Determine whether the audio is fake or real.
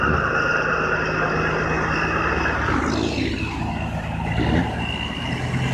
real